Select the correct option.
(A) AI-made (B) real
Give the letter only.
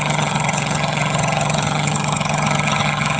A